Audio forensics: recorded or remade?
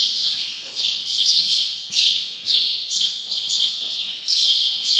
remade